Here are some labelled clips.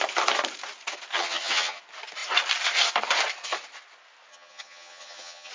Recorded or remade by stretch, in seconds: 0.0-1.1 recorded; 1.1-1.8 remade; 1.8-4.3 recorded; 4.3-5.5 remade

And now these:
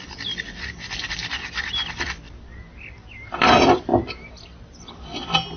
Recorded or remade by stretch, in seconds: 0.0-1.2 remade; 1.2-1.9 recorded; 1.9-5.6 remade

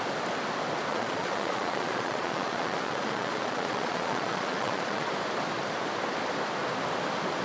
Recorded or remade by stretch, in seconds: 0.0-0.9 recorded; 0.9-5.1 remade; 5.1-7.4 recorded